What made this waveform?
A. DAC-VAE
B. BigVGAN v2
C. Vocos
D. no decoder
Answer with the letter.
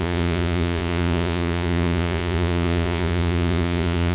C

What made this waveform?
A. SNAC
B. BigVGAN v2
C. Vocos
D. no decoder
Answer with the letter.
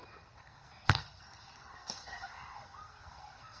A